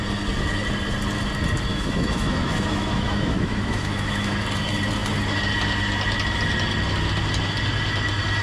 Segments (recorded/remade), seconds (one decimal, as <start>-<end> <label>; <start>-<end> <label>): 0.0-1.7 recorded; 1.7-4.4 remade; 4.4-8.4 recorded